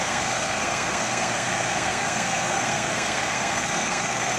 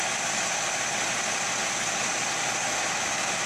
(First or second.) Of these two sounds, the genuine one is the second